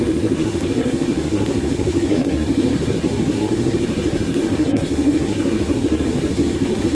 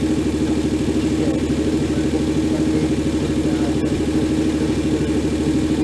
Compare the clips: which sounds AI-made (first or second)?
first